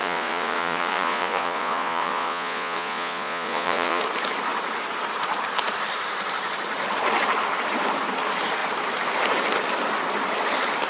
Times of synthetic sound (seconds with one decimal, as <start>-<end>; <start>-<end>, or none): 0.0-4.0